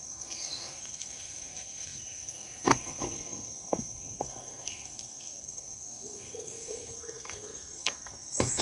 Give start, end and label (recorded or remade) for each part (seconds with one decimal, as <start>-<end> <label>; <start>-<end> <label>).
0.0-8.6 remade

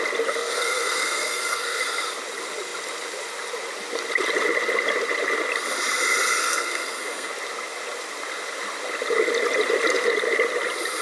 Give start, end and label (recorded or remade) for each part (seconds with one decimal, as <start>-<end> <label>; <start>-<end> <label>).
0.0-0.4 recorded; 0.4-1.8 remade; 1.8-6.4 recorded; 6.4-7.3 remade; 7.3-11.0 recorded